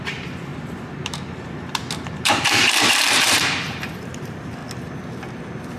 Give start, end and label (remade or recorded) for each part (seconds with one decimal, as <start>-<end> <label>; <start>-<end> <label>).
0.0-4.6 remade; 4.6-5.8 recorded